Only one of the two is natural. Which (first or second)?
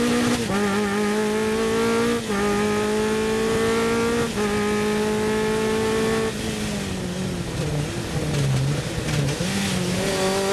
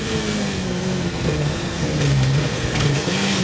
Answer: first